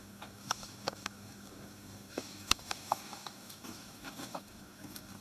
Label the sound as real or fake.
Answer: fake